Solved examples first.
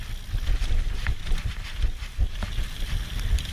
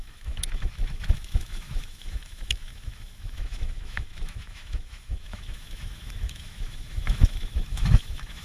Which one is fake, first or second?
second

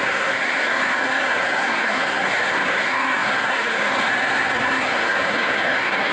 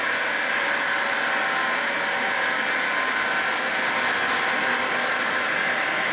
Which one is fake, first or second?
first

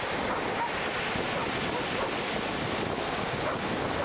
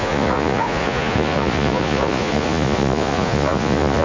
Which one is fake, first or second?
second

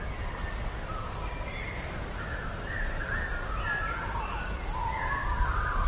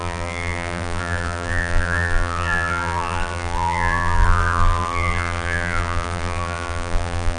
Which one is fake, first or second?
second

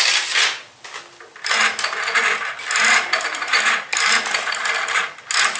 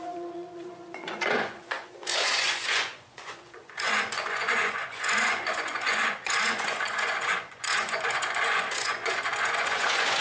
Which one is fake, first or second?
second